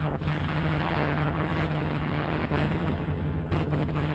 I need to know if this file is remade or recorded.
remade